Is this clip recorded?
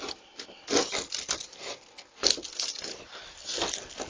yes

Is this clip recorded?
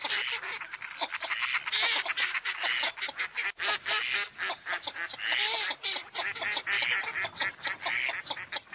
yes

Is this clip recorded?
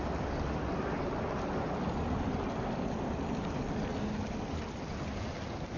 yes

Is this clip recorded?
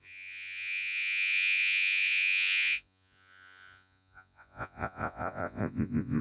no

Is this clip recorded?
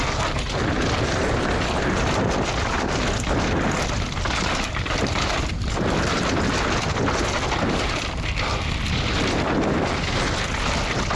yes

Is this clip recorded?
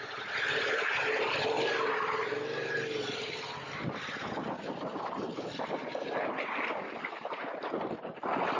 yes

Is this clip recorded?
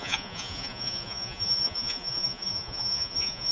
no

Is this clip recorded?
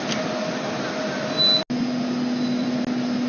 yes